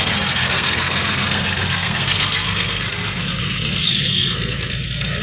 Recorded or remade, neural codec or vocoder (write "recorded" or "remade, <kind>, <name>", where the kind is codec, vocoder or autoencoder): remade, codec, SNAC